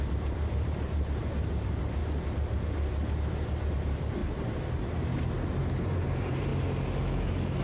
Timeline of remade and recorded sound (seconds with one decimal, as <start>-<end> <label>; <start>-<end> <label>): 0.0-2.0 remade; 2.0-3.7 recorded; 3.7-4.2 remade; 4.2-5.6 recorded; 5.6-6.5 remade; 6.5-7.6 recorded